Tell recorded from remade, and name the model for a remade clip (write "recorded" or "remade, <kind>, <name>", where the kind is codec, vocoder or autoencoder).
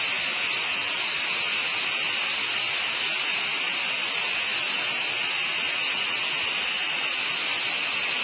recorded